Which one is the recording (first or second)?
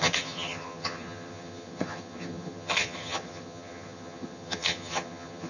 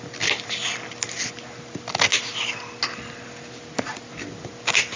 second